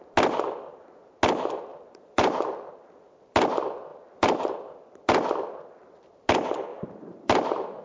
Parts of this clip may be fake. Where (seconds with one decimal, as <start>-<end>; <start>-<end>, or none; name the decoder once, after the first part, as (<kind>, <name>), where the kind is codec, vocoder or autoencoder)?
1.7-2.7 (vocoder, BigVGAN v2); 3.9-4.5; 6.7-7.8